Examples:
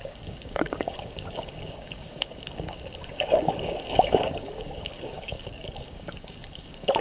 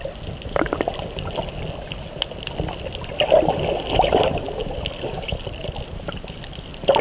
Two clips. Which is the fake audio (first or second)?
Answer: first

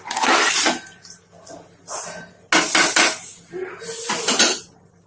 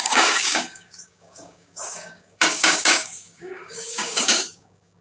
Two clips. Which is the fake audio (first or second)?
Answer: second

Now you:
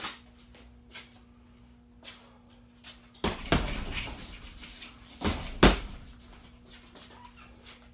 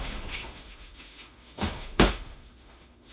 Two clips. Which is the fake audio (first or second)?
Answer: second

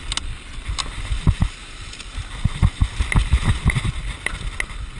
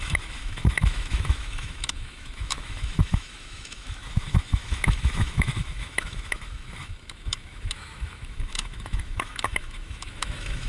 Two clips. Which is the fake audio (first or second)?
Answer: second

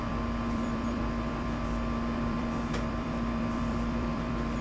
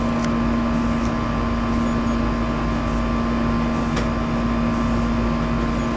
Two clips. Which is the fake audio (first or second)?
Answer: first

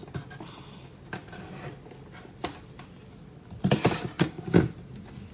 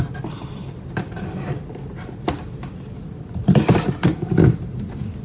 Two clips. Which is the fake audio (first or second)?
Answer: second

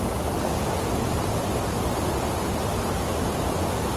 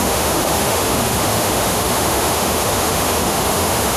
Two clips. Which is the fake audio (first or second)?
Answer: second